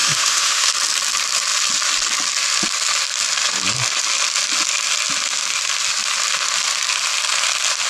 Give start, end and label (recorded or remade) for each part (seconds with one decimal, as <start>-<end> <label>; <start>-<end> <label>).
0.0-0.7 remade; 0.7-7.9 recorded